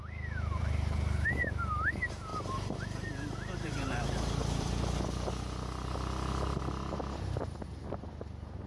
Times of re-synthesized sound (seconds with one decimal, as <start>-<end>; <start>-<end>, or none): 2.3-5.0